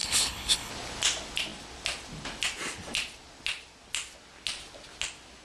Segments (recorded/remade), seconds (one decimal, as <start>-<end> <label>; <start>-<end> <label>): 0.0-0.7 remade; 0.7-5.4 recorded